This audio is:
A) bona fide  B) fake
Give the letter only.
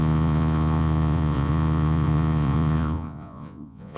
B